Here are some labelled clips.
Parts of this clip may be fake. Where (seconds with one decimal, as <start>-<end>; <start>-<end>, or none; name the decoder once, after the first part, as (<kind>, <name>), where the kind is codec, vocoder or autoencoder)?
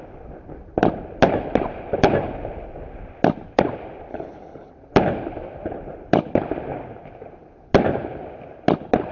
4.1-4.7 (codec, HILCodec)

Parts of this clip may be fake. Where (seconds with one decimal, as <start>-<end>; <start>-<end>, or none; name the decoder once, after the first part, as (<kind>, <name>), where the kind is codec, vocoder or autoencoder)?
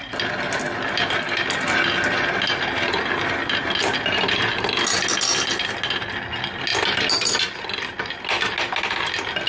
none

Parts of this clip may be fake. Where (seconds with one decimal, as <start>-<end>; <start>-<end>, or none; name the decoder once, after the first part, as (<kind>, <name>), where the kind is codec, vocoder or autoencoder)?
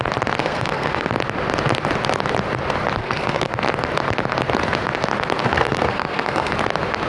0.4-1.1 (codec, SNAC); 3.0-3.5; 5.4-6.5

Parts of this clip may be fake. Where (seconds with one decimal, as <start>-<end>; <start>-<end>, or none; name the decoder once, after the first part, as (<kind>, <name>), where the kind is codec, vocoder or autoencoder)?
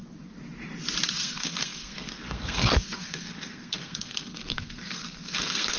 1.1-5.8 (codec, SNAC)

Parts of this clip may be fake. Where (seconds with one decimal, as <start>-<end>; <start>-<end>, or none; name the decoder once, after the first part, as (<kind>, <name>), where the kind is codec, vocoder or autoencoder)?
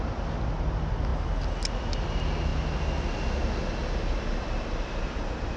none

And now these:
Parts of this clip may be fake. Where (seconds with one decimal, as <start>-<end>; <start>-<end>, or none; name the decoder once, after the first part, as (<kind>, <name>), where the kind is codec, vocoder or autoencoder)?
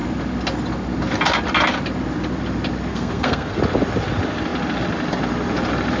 2.9-3.6 (codec, SNAC)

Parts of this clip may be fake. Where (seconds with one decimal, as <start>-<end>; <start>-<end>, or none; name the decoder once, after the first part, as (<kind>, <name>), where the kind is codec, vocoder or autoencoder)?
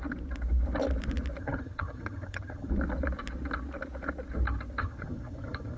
1.4-2.7 (vocoder, HiFi-GAN); 4.8-5.8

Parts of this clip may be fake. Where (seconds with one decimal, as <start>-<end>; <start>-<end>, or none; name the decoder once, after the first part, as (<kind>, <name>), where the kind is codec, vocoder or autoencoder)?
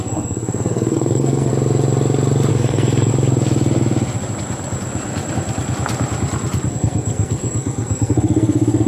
0.0-1.5 (codec, SNAC); 2.5-3.1; 6.7-8.9